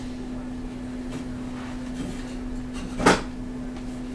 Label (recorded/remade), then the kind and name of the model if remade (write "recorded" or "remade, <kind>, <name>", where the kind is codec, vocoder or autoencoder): recorded